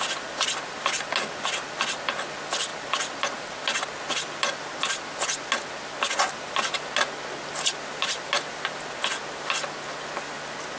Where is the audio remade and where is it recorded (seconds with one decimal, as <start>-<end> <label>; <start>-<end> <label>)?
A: 0.0-10.8 recorded